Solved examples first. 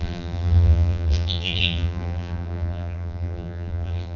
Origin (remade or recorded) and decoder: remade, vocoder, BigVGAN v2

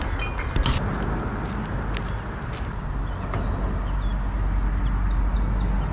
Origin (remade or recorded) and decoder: recorded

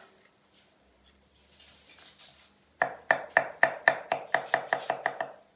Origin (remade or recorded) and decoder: recorded